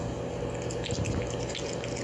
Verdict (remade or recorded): recorded